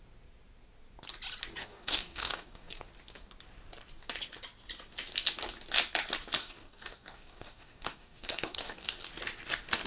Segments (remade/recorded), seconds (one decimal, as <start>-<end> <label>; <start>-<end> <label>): 0.0-1.6 recorded; 1.6-2.9 remade; 2.9-6.4 recorded; 6.4-9.0 remade; 9.0-9.9 recorded